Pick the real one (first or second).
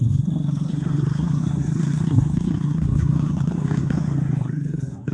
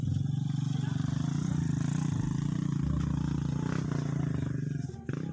second